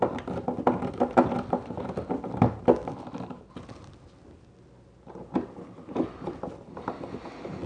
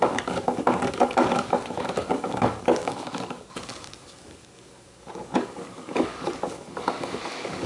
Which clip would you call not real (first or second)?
second